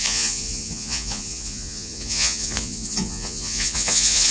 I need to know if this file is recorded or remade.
remade